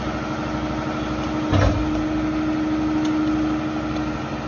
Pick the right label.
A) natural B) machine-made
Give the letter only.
A